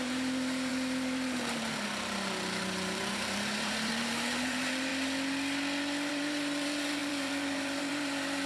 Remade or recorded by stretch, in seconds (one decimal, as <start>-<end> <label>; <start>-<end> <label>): 0.0-4.9 remade; 4.9-6.1 recorded; 6.1-8.5 remade

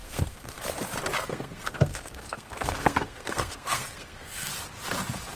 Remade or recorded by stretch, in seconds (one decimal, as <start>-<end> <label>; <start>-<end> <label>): 0.0-0.6 remade; 0.6-1.3 recorded; 1.3-4.5 remade; 4.5-5.3 recorded

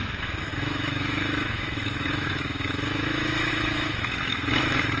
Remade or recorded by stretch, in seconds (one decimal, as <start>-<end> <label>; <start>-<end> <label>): 0.0-5.0 remade

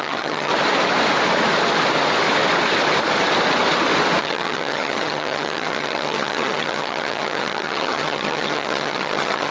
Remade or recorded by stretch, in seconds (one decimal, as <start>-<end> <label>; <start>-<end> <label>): 0.0-0.5 remade; 0.5-4.2 recorded; 4.2-9.5 remade